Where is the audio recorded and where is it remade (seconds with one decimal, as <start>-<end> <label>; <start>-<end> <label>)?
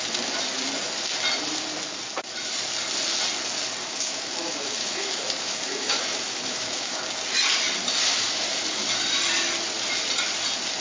0.0-3.8 recorded; 3.8-7.0 remade; 7.0-10.8 recorded